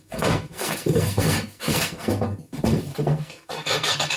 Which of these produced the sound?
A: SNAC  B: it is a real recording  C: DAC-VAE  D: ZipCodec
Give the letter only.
A